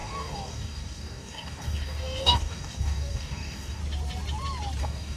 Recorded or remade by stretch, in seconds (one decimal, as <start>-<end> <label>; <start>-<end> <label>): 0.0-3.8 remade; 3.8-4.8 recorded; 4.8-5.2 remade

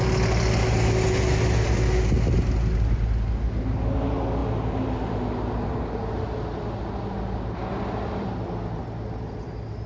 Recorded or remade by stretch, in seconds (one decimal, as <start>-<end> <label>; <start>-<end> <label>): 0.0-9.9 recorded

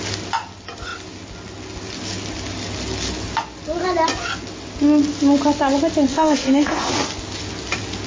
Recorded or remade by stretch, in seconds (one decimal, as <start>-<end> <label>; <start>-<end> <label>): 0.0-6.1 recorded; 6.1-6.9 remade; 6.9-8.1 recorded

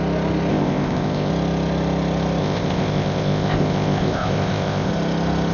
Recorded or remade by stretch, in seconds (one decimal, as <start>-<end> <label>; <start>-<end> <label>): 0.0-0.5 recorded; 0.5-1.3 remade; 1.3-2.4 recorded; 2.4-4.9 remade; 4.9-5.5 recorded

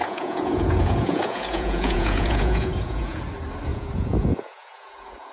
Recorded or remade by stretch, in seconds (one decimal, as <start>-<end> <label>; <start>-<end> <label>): 0.0-3.2 remade; 3.2-3.7 recorded; 3.7-5.3 remade

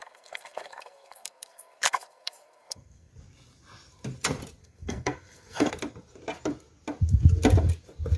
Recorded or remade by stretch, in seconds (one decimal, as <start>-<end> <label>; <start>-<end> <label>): 0.0-3.1 remade; 3.1-4.6 recorded; 4.6-5.7 remade; 5.7-8.2 recorded